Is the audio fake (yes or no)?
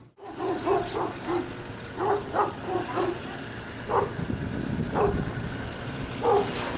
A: no